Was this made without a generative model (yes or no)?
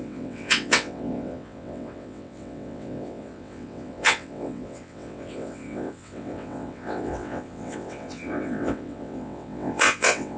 no